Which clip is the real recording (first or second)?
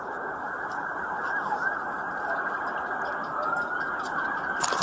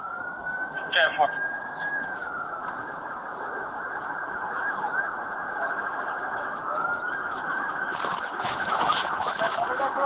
first